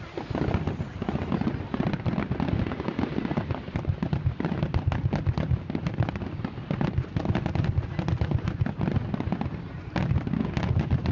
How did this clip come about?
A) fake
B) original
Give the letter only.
B